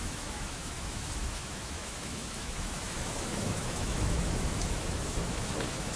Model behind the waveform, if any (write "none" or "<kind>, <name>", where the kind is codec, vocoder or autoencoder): autoencoder, DAC-VAE